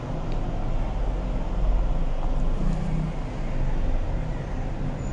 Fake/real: real